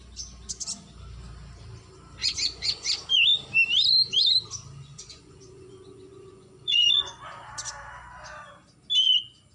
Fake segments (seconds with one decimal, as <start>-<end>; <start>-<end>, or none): 2.2-2.9; 4.8-7.3